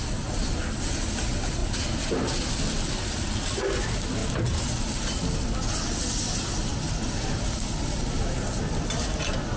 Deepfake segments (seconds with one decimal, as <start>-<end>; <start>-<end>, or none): none